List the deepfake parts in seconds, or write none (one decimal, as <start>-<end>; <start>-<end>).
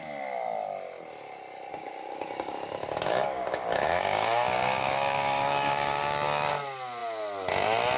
1.7-6.5